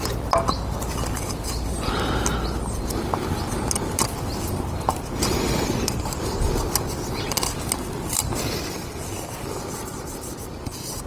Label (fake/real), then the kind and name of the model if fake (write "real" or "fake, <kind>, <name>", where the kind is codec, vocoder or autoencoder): real